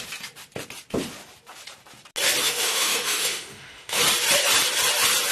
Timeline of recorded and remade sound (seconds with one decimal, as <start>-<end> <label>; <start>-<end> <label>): 0.0-2.4 recorded; 2.4-4.0 remade; 4.0-5.3 recorded